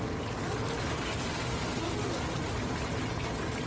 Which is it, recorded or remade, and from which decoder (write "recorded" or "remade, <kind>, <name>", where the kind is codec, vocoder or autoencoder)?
recorded